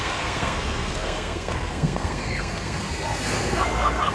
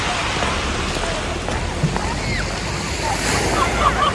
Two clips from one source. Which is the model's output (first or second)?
first